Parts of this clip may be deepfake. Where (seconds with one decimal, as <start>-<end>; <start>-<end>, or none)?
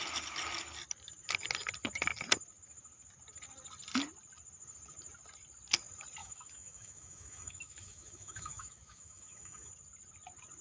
6.2-9.7